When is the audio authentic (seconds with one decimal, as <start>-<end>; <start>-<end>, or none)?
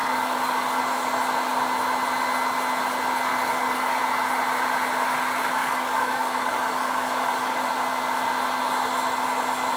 0.8-3.3; 4.0-5.6; 7.7-9.8